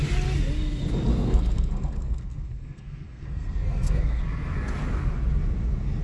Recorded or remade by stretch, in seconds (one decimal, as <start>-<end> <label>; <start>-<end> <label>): 0.0-1.1 recorded; 1.1-4.2 remade; 4.2-6.0 recorded